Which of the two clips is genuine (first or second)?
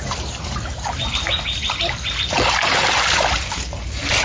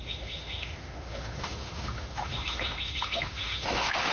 first